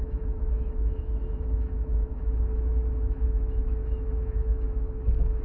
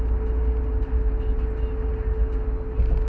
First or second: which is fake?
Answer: first